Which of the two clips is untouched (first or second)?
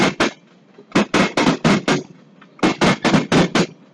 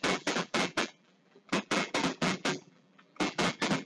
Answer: first